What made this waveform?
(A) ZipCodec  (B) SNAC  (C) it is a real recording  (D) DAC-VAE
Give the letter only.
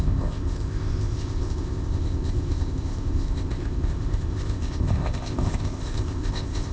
A